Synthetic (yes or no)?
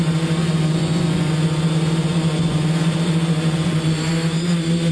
yes